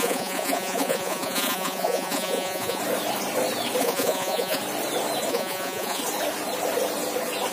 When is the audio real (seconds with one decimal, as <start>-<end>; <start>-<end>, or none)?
2.8-3.8; 4.6-5.3; 6.0-7.5

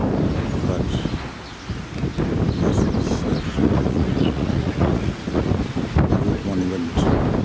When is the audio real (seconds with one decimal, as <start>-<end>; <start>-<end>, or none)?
0.0-3.5; 5.5-7.4